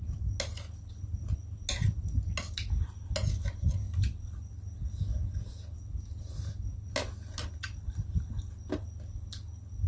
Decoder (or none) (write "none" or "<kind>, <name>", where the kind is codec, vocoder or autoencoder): none